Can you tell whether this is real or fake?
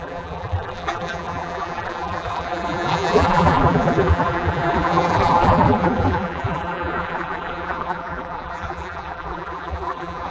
fake